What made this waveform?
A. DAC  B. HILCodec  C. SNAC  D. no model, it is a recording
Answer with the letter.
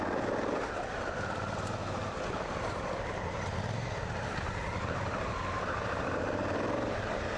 D